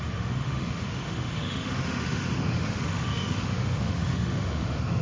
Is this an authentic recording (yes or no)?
no